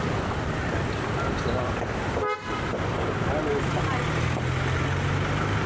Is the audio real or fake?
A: real